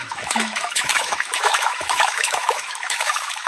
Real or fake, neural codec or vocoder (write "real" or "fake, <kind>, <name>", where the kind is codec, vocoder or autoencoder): fake, autoencoder, DAC-VAE